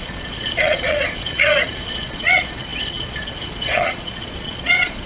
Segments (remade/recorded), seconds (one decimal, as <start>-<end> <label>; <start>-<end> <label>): 0.0-5.1 remade